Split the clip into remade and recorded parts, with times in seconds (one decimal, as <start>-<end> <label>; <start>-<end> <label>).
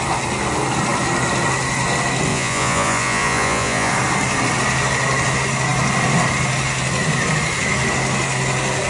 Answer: 0.0-2.3 recorded; 2.3-3.9 remade; 3.9-8.9 recorded